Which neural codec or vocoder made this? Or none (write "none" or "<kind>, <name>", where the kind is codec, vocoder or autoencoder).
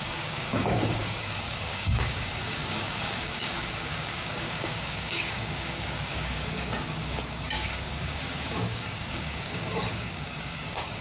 codec, DAC